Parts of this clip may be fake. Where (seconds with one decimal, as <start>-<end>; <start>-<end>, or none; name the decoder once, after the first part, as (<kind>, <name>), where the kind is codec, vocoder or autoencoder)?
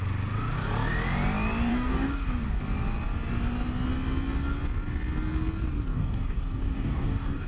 1.7-2.6 (codec, DAC); 5.9-7.5